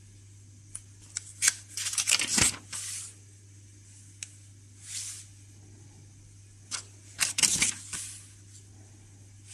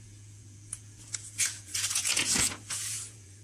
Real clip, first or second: first